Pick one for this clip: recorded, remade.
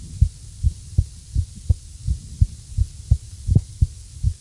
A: recorded